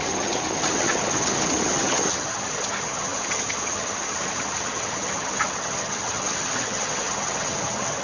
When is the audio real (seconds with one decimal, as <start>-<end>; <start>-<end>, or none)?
none